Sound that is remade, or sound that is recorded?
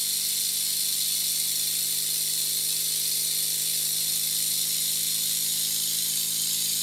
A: recorded